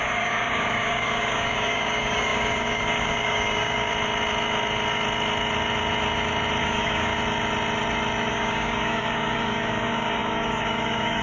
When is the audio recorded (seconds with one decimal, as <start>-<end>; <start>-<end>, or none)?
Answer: 3.9-6.6; 7.1-8.3